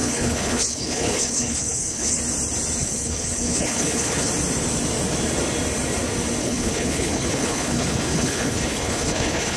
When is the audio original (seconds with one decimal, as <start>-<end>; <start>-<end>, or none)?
2.2-2.8; 4.3-6.4